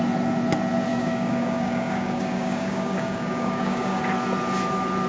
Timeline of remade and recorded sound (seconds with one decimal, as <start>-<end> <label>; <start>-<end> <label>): 0.0-0.9 recorded; 0.9-4.0 remade; 4.0-5.1 recorded

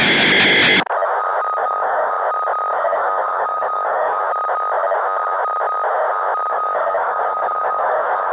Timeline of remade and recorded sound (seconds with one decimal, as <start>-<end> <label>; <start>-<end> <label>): 0.0-1.6 recorded; 1.6-2.1 remade; 2.1-2.7 recorded; 2.7-4.2 remade; 4.2-6.5 recorded; 6.5-8.3 remade

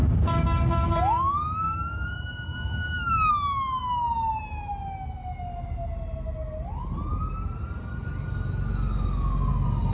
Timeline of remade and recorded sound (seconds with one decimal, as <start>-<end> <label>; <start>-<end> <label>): 0.0-3.3 remade; 3.3-9.9 recorded

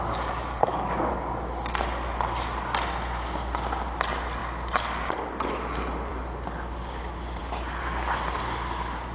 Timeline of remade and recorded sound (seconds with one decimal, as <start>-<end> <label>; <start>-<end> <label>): 0.0-0.6 recorded; 0.6-1.1 remade; 1.1-9.1 recorded

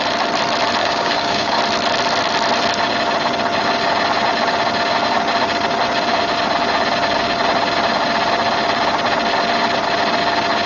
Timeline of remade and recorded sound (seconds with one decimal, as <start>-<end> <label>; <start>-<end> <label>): 0.0-0.8 recorded; 0.8-1.6 remade; 1.6-10.7 recorded

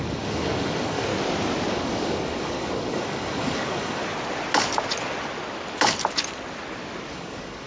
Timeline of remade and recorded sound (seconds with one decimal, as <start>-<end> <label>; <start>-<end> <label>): 0.0-1.1 remade; 1.1-1.7 recorded; 1.7-4.0 remade; 4.0-7.1 recorded; 7.1-7.7 remade

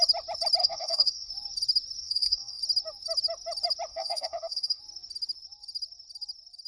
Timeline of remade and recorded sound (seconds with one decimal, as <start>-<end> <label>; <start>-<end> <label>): 0.0-0.6 recorded; 0.6-1.3 remade; 1.3-2.0 recorded; 2.0-2.6 remade; 2.6-3.9 recorded; 3.9-4.8 remade; 4.8-6.7 recorded

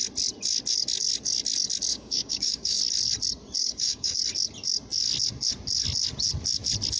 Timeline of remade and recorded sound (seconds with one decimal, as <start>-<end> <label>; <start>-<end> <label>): 0.0-1.9 recorded; 1.9-2.8 remade; 2.8-3.6 recorded; 3.6-4.2 remade; 4.2-7.0 recorded